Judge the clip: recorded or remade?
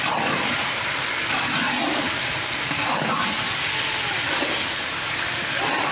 recorded